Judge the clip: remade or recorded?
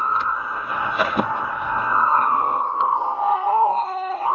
remade